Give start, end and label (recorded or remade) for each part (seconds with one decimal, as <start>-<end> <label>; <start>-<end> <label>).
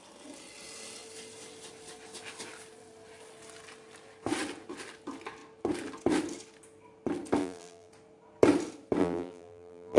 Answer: 0.0-7.4 recorded; 7.4-7.9 remade; 7.9-9.0 recorded; 9.0-10.0 remade